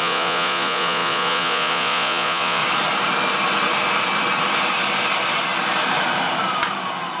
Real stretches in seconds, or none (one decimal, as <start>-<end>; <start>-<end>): 2.6-7.2